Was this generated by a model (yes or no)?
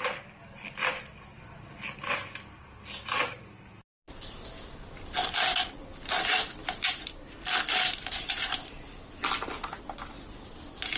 no